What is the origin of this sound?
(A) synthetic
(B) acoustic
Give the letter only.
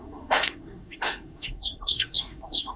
A